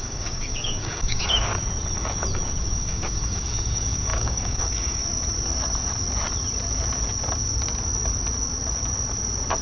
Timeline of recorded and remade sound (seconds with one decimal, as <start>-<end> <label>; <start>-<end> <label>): 0.0-1.5 remade; 1.5-2.6 recorded; 2.6-5.0 remade; 5.0-9.6 recorded